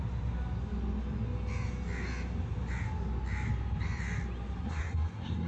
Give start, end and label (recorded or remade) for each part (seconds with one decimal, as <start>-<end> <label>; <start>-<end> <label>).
0.0-4.6 recorded; 4.6-5.5 remade